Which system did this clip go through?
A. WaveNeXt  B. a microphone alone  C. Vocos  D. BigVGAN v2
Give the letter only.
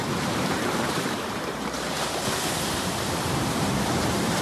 D